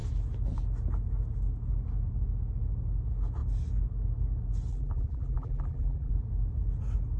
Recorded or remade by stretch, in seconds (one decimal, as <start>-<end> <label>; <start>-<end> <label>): 0.0-4.7 recorded; 4.7-6.1 remade; 6.1-7.2 recorded